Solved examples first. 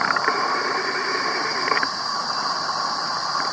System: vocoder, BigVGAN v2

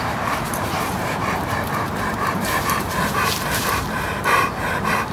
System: vocoder, BigVGAN v2